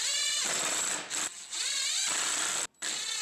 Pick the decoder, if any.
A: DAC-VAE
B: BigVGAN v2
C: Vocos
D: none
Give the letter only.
D